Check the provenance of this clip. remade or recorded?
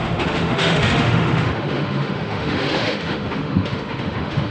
remade